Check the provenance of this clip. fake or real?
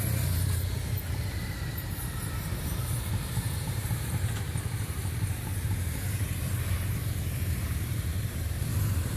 fake